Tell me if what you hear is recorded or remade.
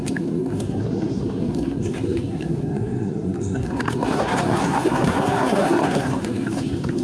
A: remade